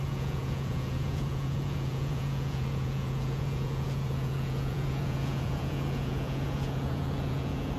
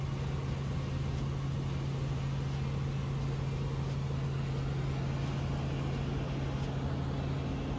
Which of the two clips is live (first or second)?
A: second